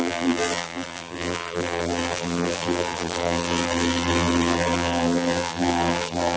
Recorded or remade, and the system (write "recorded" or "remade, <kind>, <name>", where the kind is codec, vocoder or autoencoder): remade, vocoder, BigVGAN v2